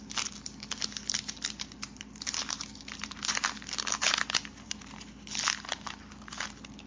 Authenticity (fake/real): real